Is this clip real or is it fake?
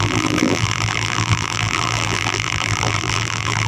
fake